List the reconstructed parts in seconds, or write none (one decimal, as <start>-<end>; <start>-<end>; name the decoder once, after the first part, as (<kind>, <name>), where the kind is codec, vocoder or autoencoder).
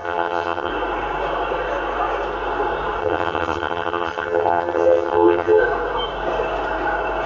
0.0-0.7 (vocoder, HiFi-GAN); 3.0-5.6